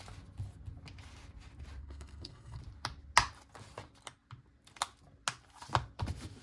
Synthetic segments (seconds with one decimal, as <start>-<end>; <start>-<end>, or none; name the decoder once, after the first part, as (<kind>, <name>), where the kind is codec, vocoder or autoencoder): 1.8-2.6 (codec, SNAC)